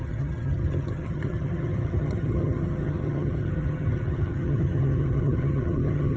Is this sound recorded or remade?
remade